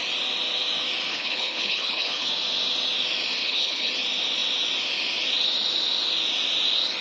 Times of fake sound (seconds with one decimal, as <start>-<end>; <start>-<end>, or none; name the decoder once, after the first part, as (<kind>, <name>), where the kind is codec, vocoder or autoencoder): 1.1-2.3 (codec, HILCodec); 3.4-3.9